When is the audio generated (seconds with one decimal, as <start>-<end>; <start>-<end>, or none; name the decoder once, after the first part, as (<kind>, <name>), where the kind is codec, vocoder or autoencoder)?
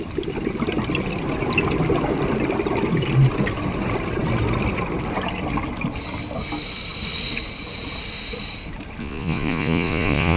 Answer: 9.0-10.4 (vocoder, Vocos)